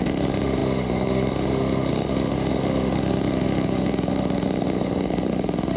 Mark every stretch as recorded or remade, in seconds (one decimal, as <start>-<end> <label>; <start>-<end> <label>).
0.0-5.8 remade